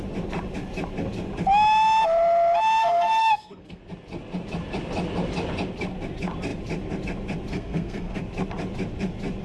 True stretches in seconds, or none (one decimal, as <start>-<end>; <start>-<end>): 0.0-2.8; 3.8-7.5; 8.2-9.4